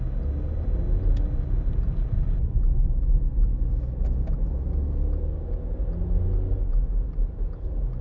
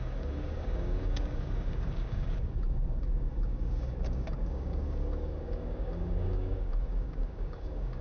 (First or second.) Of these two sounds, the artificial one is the second